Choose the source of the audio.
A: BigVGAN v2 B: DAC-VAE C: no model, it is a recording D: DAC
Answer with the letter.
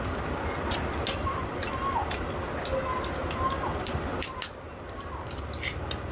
C